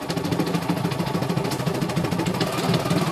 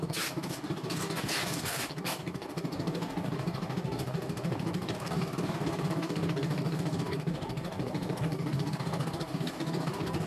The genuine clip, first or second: first